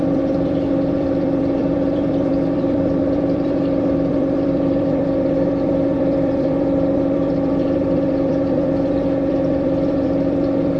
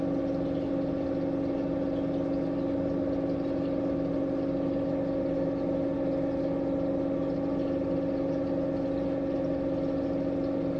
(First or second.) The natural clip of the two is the second